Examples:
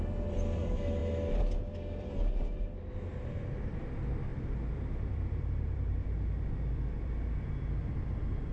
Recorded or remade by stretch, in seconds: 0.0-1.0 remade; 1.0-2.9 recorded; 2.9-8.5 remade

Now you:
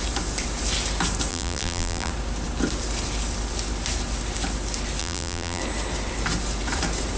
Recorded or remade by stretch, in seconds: 0.0-1.3 recorded; 1.3-2.1 remade; 2.1-5.0 recorded; 5.0-5.6 remade; 5.6-7.2 recorded

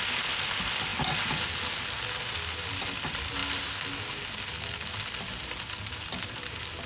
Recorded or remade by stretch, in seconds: 0.0-6.9 recorded